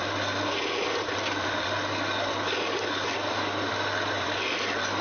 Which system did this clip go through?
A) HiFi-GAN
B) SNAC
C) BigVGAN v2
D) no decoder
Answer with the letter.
D